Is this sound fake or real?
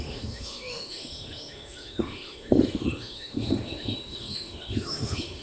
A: fake